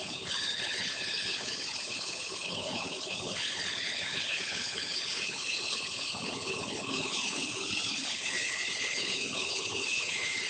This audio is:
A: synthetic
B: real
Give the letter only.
A